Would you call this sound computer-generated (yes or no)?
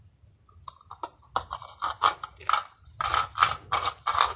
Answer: no